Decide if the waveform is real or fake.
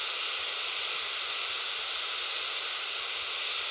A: real